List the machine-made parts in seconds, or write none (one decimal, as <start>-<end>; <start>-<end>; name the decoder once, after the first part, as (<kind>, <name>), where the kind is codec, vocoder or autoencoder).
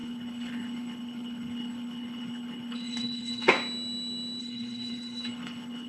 0.0-3.5 (codec, HILCodec); 4.4-5.9